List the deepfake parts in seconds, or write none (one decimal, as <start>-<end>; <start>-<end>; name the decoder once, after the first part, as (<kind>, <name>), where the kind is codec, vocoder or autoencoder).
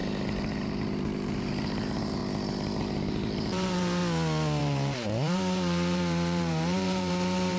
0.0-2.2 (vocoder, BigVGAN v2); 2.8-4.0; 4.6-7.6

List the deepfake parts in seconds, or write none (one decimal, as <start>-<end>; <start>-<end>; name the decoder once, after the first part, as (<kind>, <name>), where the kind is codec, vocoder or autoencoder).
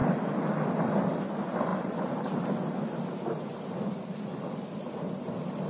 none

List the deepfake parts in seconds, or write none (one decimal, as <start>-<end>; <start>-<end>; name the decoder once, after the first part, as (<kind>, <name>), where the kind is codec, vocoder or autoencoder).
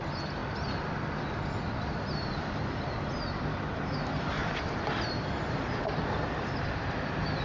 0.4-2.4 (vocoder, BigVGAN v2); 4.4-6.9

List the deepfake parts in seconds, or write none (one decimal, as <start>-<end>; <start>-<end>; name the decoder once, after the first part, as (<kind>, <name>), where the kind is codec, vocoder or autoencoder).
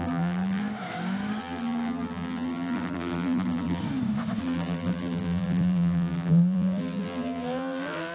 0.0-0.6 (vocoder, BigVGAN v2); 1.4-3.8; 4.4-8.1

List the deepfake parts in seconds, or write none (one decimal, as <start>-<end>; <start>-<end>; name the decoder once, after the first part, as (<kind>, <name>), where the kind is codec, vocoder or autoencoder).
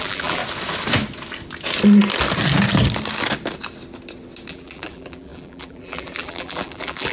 0.0-0.4 (vocoder, BigVGAN v2); 4.5-7.1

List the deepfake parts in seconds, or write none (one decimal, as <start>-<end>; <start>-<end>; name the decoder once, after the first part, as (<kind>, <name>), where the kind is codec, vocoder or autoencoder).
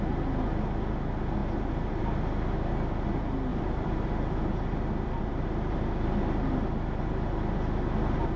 3.5-5.2 (vocoder, BigVGAN v2)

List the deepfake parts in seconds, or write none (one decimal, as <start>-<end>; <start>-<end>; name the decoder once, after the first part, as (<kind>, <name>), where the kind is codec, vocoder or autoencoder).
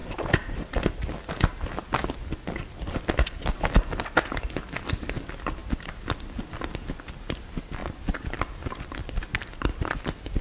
0.0-0.8 (vocoder, BigVGAN v2); 7.8-9.1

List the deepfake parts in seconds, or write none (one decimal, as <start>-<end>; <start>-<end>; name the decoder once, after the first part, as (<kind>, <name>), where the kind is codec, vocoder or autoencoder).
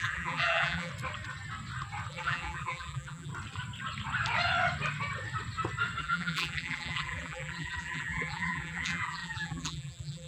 0.0-0.9 (vocoder, BigVGAN v2); 2.1-3.3; 6.0-10.3